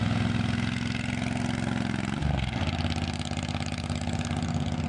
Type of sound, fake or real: real